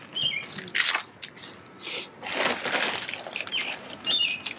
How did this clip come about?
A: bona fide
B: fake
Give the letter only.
A